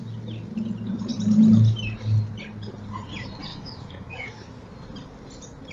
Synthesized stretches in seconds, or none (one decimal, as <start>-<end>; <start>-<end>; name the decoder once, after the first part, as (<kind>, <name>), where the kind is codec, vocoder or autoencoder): 3.5-4.6 (autoencoder, DAC-VAE)

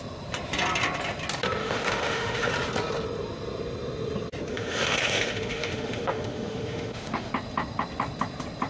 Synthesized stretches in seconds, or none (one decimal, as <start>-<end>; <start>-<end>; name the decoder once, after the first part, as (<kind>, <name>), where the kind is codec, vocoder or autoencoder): 1.6-2.5 (autoencoder, DAC-VAE); 4.5-7.3

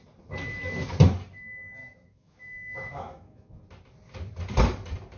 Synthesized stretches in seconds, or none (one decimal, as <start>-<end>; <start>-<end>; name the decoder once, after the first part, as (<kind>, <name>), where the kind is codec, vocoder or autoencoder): 1.8-3.6 (autoencoder, DAC-VAE)

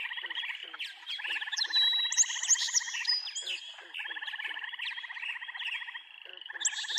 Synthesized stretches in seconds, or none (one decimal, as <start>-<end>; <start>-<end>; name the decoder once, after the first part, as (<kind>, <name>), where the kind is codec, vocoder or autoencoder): none